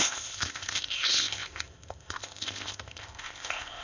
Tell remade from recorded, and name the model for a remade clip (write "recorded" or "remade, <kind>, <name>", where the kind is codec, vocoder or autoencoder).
remade, codec, ZipCodec